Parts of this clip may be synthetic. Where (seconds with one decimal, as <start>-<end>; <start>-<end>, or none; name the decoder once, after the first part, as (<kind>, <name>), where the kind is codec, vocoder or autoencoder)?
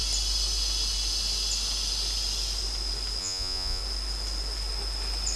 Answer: 3.2-3.8 (vocoder, Vocos)